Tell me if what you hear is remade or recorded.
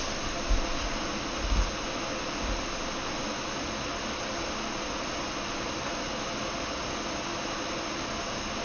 recorded